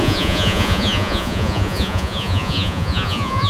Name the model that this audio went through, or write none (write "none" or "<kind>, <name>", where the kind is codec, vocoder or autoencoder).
vocoder, Vocos